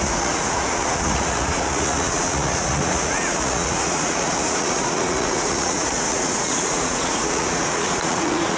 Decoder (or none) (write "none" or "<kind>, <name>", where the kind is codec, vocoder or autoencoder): vocoder, Vocos